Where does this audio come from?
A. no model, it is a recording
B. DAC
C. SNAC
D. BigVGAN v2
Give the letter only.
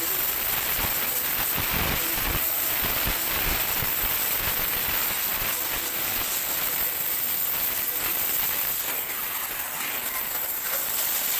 A